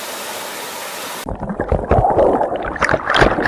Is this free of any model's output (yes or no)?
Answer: yes